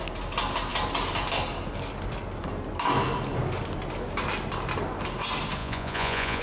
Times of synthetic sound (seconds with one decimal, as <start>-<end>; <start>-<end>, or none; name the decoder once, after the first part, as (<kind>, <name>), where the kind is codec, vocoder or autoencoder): 5.6-6.4 (vocoder, Vocos)